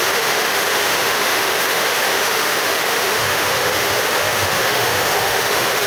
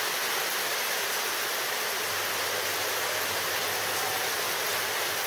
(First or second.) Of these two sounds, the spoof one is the first